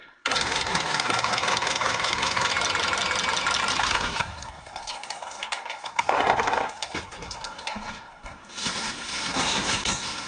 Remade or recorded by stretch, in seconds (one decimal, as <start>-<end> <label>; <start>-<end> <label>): 0.0-2.5 remade; 2.5-3.8 recorded; 3.8-10.3 remade